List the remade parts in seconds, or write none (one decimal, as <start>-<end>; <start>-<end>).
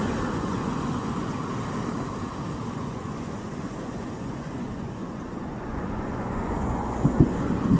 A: 0.0-1.3; 2.7-7.8